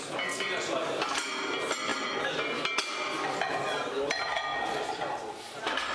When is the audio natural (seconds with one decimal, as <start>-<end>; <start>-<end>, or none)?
0.0-5.9